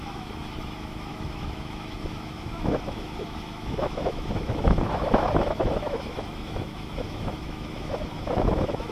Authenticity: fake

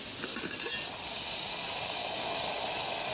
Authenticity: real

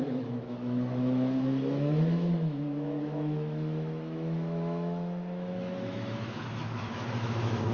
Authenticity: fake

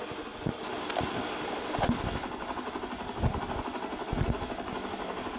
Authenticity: real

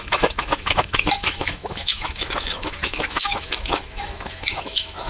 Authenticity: fake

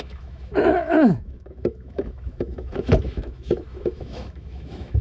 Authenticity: fake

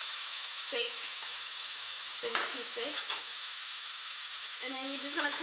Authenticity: fake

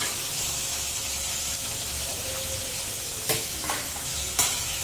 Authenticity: fake